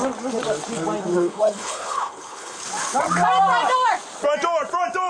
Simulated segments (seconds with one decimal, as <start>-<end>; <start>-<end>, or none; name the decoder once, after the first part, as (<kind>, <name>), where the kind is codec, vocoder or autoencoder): 1.1-2.6 (codec, HILCodec)